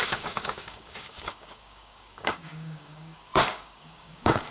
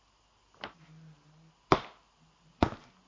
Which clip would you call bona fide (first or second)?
second